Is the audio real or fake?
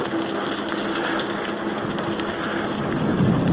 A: real